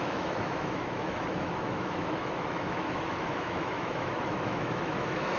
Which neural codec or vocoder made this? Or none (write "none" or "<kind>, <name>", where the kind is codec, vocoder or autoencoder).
autoencoder, DAC-VAE